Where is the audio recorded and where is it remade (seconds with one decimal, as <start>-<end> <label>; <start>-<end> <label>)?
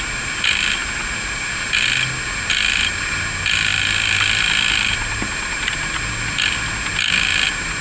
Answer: 0.0-7.8 recorded